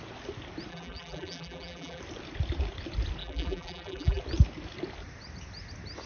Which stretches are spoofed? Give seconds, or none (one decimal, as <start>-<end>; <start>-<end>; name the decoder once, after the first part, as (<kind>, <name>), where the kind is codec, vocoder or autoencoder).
0.7-2.0 (vocoder, BigVGAN v2); 3.2-4.2